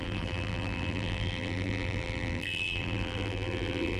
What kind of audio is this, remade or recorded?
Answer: remade